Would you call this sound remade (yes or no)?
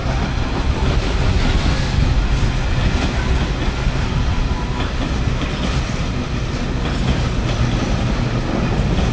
no